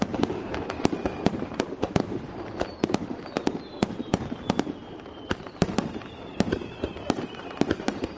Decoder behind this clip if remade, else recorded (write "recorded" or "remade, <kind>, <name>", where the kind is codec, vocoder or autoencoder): remade, vocoder, BigVGAN v2